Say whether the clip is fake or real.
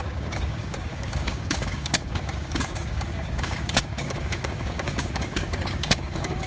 fake